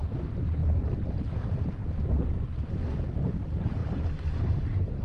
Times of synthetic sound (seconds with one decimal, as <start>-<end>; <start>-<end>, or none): none